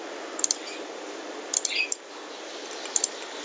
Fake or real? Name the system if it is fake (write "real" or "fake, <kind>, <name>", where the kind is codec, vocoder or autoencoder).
real